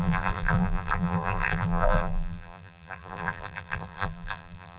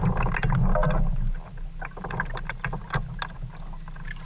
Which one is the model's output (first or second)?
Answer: first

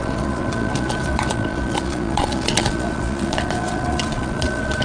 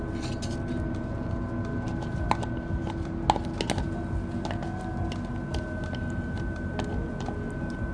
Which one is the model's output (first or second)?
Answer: first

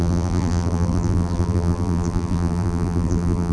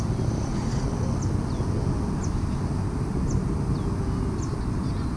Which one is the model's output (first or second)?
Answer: first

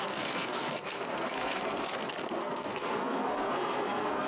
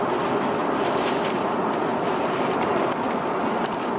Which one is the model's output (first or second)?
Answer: first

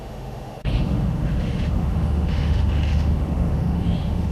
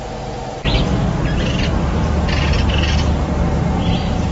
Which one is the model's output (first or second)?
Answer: first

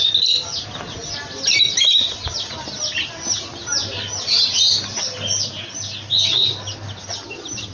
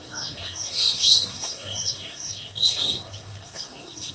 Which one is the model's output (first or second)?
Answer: second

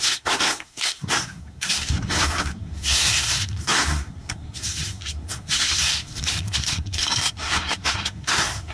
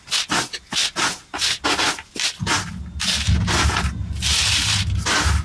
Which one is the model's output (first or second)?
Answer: first